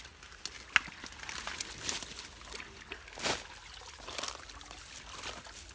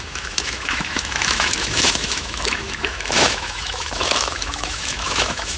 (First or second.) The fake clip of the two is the second